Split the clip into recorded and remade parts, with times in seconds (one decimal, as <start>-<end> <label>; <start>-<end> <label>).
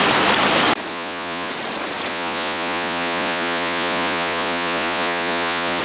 0.0-0.9 recorded; 0.9-1.5 remade; 1.5-2.1 recorded; 2.1-5.8 remade